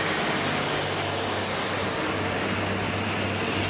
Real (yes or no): yes